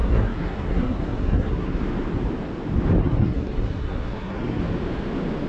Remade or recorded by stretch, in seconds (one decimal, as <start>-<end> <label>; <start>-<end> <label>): 0.0-1.8 remade; 1.8-3.0 recorded; 3.0-4.6 remade; 4.6-5.5 recorded